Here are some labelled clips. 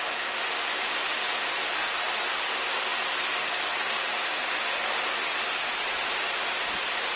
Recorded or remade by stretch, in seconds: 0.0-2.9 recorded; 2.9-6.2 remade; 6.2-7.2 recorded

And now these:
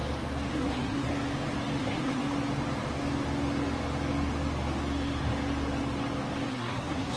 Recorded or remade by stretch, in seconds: 0.0-0.5 recorded; 0.5-1.1 remade; 1.1-1.8 recorded; 1.8-2.2 remade; 2.2-6.5 recorded; 6.5-7.2 remade

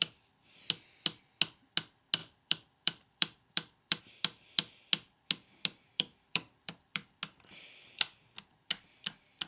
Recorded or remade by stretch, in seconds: 0.0-2.2 recorded; 2.2-4.0 remade; 4.0-5.9 recorded; 5.9-7.2 remade; 7.2-9.5 recorded

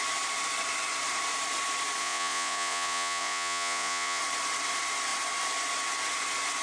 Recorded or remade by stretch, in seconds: 0.0-2.0 recorded; 2.0-4.2 remade; 4.2-6.6 recorded